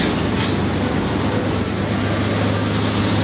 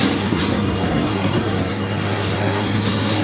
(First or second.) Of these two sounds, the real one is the first